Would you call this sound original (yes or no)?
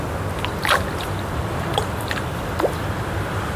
yes